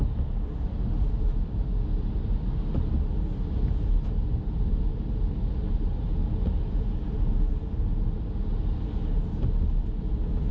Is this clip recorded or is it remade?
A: recorded